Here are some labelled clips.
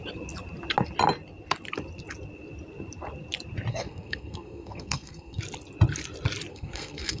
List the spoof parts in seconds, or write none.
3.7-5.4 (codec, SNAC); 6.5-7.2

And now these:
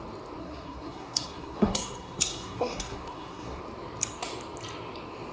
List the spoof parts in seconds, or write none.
0.4-3.6 (codec, SNAC)

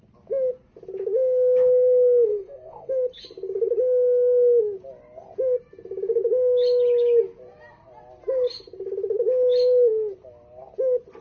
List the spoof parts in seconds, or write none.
2.3-2.9 (codec, SNAC)

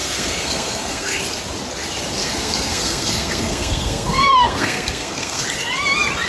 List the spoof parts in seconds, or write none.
0.0-1.2 (codec, SNAC); 2.2-5.4

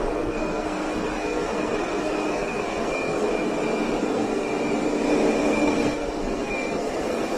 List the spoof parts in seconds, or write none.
0.0-3.3 (codec, SNAC); 4.0-4.5; 5.4-7.4

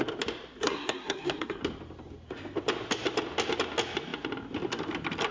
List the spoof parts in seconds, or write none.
0.6-1.6 (codec, SNAC)

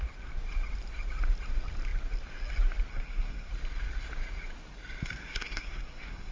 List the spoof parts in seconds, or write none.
2.9-3.5 (codec, SNAC); 5.2-6.3

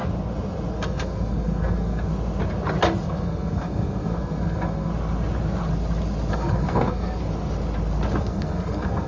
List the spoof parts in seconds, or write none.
0.7-2.1 (codec, SNAC); 3.0-4.9; 6.3-7.2; 8.2-9.1